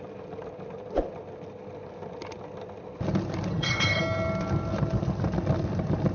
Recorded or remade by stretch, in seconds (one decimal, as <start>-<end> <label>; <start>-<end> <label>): 0.0-3.5 recorded; 3.5-4.0 remade; 4.0-6.1 recorded